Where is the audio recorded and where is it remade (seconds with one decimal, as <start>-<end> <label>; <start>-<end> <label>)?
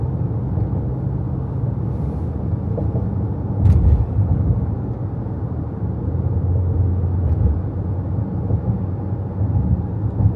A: 0.0-4.3 recorded; 4.3-5.0 remade; 5.0-10.4 recorded